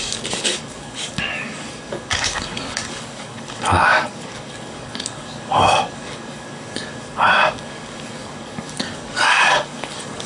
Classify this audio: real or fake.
fake